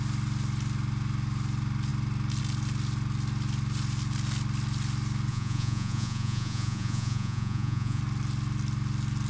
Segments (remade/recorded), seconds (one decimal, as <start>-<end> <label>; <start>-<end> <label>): 0.0-5.3 recorded; 5.3-8.0 remade; 8.0-9.3 recorded